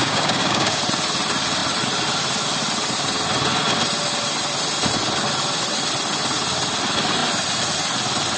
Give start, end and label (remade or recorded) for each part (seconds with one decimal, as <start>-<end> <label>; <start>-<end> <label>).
0.0-0.8 remade; 0.8-8.4 recorded